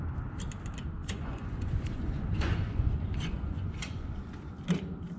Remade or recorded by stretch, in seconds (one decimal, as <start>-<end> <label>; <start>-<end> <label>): 0.0-1.0 recorded; 1.0-4.1 remade; 4.1-5.2 recorded